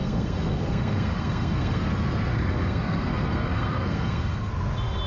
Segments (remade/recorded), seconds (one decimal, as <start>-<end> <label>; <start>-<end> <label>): 0.0-1.9 remade; 1.9-2.3 recorded; 2.3-4.5 remade; 4.5-5.1 recorded

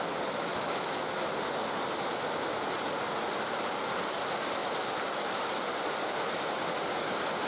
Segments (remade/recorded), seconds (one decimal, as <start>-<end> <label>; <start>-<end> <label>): 0.0-0.5 recorded; 0.5-1.0 remade; 1.0-7.5 recorded